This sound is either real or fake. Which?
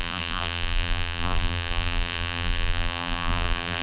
fake